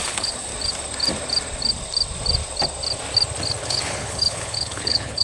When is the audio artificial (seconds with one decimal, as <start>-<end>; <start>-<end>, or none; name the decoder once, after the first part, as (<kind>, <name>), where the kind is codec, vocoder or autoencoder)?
0.0-0.5 (codec, HILCodec); 3.6-5.2